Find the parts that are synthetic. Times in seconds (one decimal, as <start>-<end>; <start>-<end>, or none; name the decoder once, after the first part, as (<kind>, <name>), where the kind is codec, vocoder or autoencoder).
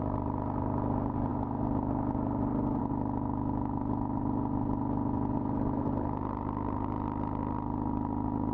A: none